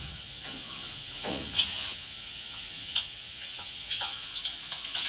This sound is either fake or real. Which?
fake